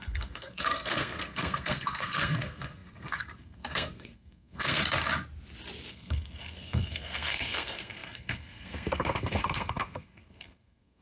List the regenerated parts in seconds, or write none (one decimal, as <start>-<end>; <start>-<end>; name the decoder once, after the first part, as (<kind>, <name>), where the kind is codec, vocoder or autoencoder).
0.0-4.8 (codec, SNAC); 5.9-11.0